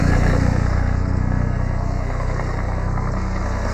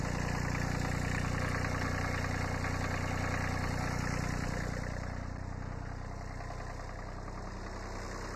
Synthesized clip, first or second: first